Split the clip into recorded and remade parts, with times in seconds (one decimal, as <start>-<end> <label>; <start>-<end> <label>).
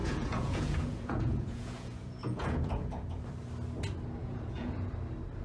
0.0-3.2 remade; 3.2-4.2 recorded; 4.2-4.9 remade; 4.9-5.4 recorded